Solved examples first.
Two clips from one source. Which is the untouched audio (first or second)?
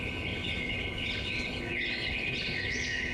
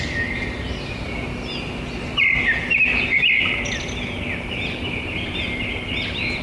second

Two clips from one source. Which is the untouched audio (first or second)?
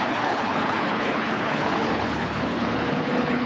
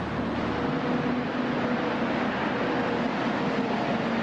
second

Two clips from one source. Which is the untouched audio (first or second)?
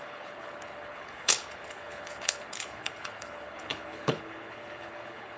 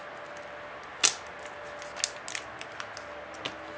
second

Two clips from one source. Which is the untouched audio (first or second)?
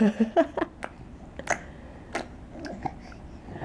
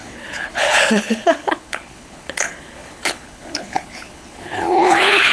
first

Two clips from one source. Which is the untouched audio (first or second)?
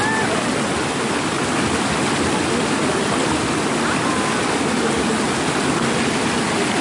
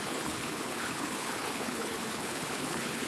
first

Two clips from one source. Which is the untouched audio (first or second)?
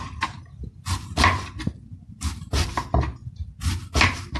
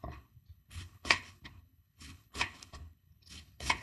first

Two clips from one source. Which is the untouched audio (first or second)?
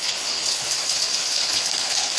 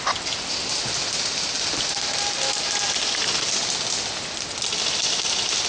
second